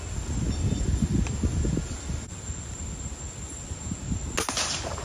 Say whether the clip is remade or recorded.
recorded